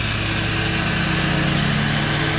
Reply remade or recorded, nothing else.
recorded